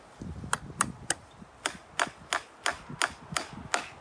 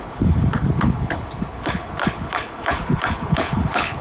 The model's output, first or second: second